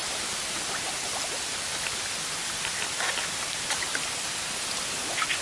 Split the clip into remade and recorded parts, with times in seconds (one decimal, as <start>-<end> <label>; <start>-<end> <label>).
0.0-5.4 recorded